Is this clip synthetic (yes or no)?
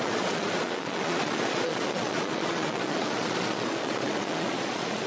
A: yes